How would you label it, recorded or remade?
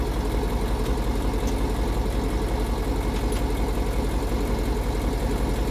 recorded